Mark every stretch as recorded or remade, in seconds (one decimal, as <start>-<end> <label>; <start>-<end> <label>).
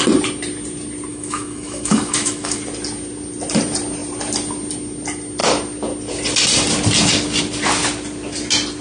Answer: 0.0-1.1 recorded; 1.1-2.6 remade; 2.6-8.8 recorded